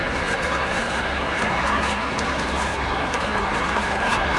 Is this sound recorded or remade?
remade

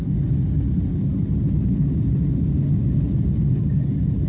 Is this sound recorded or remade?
recorded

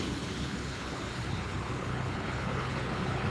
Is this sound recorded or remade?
remade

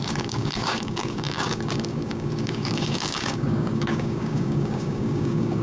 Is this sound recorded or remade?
remade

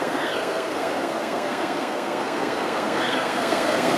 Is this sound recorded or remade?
remade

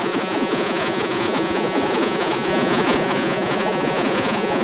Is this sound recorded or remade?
remade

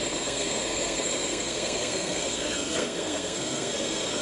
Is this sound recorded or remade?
remade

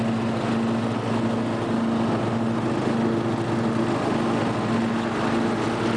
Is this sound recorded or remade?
recorded